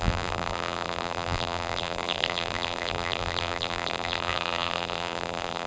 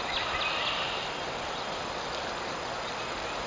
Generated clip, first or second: first